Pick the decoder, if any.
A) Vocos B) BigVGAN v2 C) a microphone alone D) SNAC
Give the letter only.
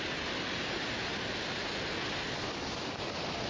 C